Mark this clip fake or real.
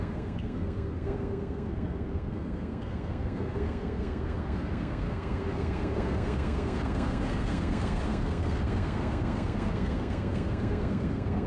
fake